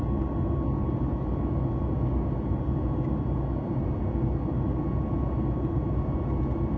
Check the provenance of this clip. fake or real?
real